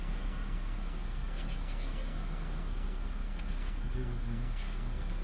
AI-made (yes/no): yes